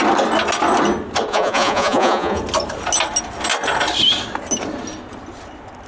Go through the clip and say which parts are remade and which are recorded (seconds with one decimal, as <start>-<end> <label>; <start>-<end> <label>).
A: 0.0-1.3 recorded; 1.3-2.4 remade; 2.4-5.9 recorded